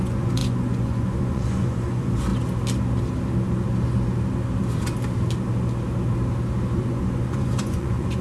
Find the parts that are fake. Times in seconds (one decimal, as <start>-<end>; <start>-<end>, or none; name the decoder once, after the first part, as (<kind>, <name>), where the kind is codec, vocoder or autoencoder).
0.0-2.3 (vocoder, Vocos); 6.8-8.2